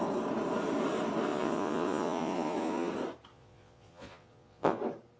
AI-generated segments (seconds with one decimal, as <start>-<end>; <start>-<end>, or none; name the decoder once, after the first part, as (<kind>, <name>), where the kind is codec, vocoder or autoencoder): 1.3-2.9 (vocoder, Vocos); 3.3-4.8